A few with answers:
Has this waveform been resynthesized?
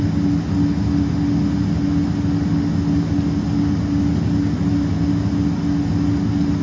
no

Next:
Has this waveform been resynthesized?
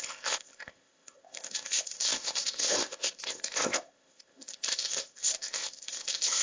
yes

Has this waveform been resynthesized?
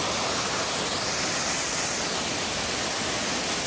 no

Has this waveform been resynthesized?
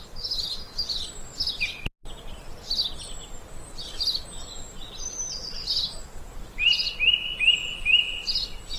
no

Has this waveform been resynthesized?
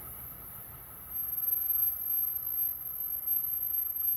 no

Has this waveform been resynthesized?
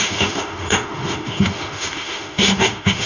yes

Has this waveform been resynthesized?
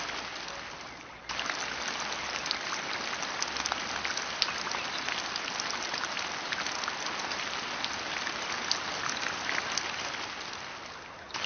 no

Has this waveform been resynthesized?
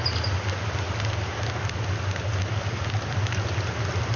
no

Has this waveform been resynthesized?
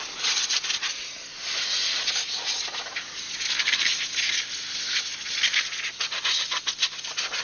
no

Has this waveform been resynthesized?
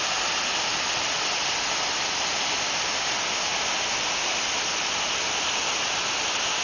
no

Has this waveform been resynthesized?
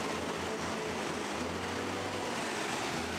no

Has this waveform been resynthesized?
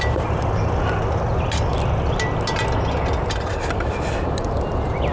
no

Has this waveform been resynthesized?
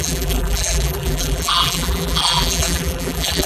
yes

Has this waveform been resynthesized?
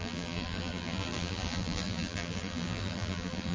yes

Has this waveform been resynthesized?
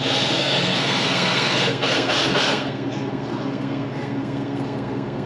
yes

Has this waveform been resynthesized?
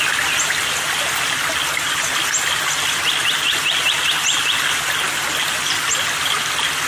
no